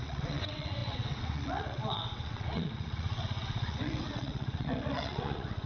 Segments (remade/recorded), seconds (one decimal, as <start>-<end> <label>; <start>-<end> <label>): 0.0-5.7 remade